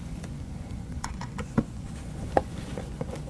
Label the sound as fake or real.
fake